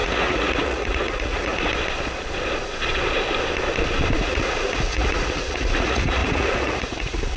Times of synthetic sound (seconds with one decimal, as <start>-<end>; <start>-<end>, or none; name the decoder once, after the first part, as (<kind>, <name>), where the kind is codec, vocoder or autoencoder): 0.0-1.7 (vocoder, Vocos); 4.2-7.4